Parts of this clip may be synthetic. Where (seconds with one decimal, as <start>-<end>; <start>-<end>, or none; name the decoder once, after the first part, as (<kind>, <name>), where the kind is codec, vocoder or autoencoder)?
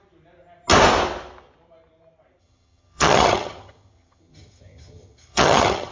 2.4-5.9 (vocoder, HiFi-GAN)